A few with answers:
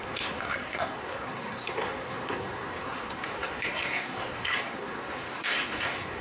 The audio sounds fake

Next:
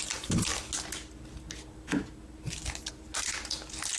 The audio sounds real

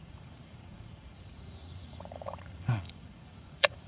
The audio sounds fake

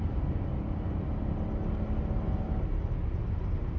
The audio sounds real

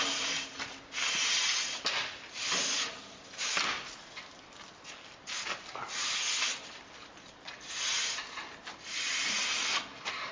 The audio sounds real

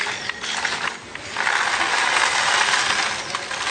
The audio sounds real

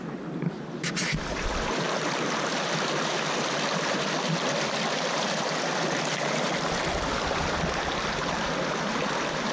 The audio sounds real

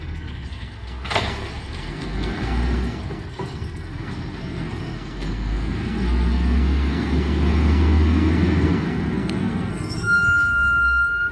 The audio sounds fake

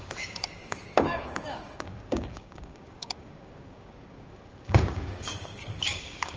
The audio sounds fake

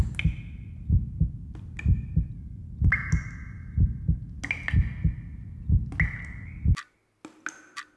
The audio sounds real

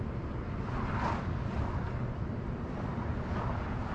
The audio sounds real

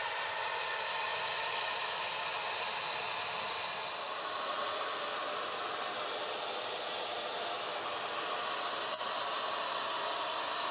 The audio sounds real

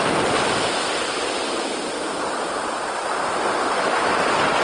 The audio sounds real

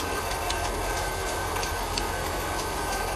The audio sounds fake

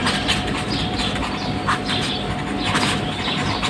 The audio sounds fake